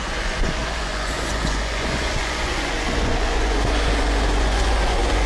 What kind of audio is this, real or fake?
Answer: fake